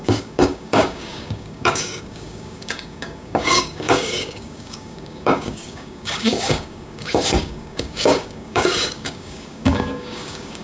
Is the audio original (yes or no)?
no